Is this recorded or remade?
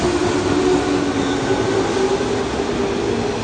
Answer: recorded